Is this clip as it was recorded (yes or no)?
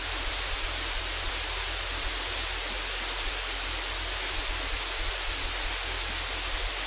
yes